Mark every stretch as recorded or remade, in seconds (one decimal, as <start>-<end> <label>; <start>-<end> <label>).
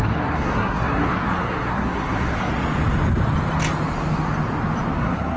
0.0-2.5 remade; 2.5-5.0 recorded; 5.0-5.4 remade